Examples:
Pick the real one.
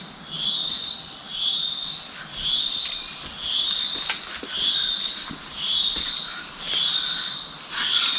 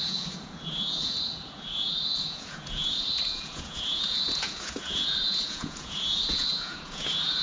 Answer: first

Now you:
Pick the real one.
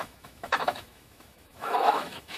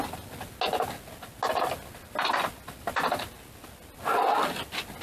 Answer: second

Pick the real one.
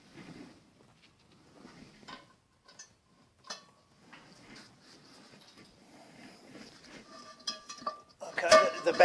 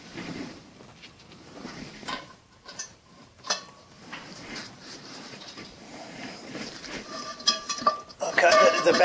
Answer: first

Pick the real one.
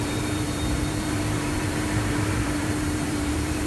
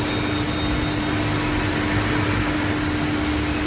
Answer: second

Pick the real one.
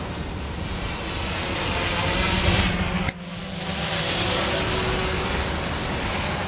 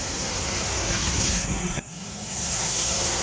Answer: first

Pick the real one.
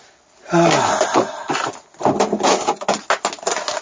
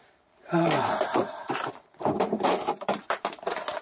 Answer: first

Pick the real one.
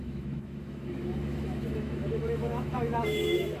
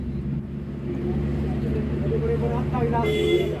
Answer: second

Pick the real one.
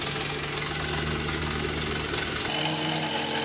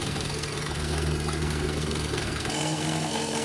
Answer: first